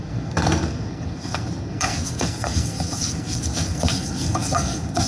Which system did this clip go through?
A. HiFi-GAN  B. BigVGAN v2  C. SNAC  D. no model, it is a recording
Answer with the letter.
C